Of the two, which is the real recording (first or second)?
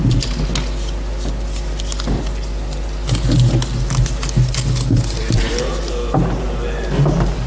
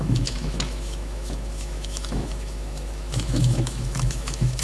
first